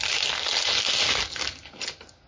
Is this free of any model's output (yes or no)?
yes